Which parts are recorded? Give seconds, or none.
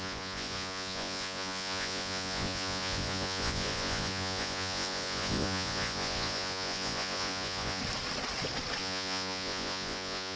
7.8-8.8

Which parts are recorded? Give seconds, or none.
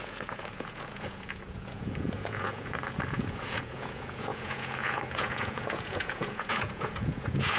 none